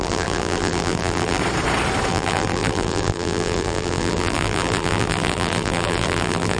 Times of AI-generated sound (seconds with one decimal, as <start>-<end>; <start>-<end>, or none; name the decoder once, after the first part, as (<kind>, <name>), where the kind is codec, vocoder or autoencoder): 0.0-1.4 (vocoder, BigVGAN v2); 2.1-6.6

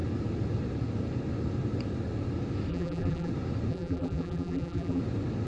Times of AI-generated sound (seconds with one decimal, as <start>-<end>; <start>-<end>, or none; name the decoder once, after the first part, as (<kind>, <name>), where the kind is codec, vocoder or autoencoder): 2.7-3.3 (vocoder, BigVGAN v2); 3.7-5.0

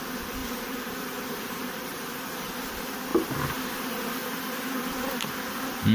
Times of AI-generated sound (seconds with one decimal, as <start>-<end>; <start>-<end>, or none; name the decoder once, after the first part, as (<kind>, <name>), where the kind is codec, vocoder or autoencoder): 0.4-2.7 (vocoder, BigVGAN v2)

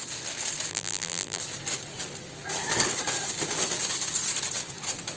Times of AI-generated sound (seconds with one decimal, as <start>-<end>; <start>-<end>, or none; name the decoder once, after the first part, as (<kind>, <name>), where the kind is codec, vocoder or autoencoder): 0.7-1.4 (vocoder, BigVGAN v2)

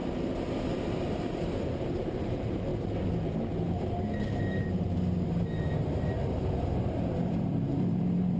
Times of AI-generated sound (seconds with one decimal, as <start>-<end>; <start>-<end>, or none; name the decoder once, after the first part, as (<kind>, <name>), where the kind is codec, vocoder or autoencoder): 0.7-2.7 (vocoder, BigVGAN v2); 7.2-8.4

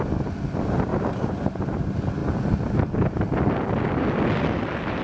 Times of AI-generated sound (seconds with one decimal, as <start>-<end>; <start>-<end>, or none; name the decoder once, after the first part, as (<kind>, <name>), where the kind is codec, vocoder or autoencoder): 0.9-1.6 (vocoder, BigVGAN v2)